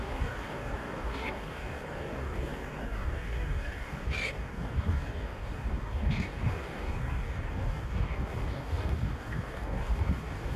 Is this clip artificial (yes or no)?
yes